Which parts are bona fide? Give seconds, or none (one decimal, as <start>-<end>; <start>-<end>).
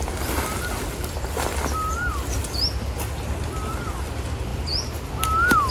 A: 0.0-5.7